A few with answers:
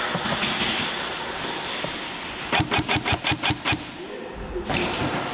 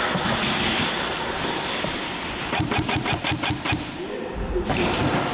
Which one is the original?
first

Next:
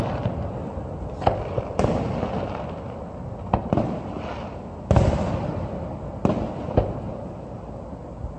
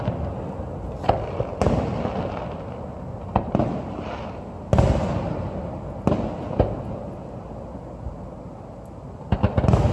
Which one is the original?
second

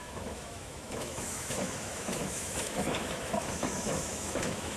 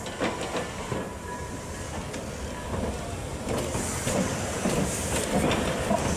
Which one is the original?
second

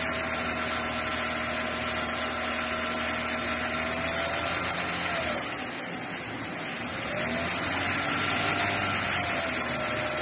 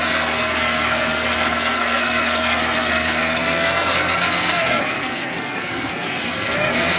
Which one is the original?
first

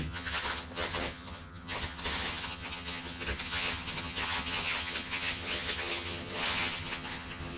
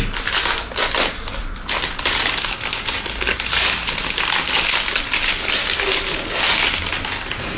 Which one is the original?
second